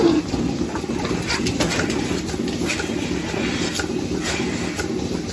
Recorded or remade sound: recorded